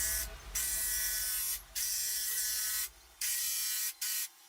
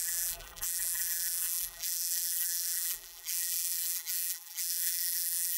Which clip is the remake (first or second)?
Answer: second